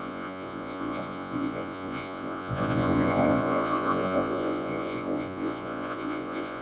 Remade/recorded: remade